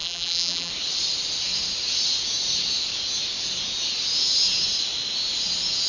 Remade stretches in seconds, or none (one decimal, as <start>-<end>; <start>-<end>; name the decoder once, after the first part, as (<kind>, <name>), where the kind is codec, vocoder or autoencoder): 0.0-0.7 (vocoder, BigVGAN v2)

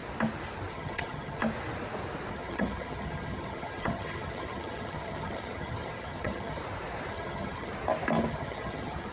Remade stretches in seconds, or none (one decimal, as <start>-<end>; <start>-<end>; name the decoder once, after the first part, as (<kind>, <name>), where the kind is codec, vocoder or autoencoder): 0.7-1.4 (vocoder, HiFi-GAN); 2.3-6.6; 7.1-7.7; 8.3-9.1

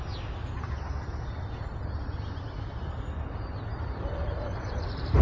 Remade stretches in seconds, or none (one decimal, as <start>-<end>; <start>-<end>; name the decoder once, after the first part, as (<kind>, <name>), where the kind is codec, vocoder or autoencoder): 3.7-5.2 (vocoder, BigVGAN v2)

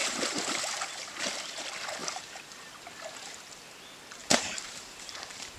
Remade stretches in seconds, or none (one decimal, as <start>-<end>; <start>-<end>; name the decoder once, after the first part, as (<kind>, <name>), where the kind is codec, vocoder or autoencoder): 0.0-1.6 (vocoder, BigVGAN v2); 2.0-2.7; 4.2-5.6

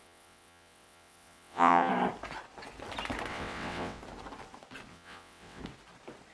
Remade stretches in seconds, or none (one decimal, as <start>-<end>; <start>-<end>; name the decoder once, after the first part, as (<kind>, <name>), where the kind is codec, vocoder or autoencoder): 0.0-1.9 (vocoder, WaveNeXt); 3.3-4.0; 4.9-5.6